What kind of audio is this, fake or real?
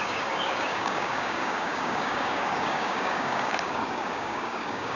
fake